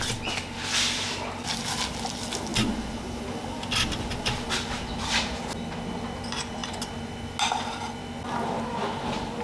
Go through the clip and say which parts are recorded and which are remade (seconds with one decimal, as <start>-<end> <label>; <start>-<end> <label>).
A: 0.0-9.4 recorded